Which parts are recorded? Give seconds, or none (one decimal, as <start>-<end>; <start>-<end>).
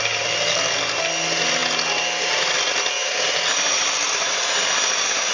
0.0-5.3